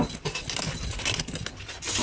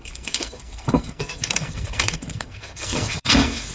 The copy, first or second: second